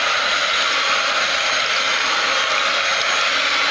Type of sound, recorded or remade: recorded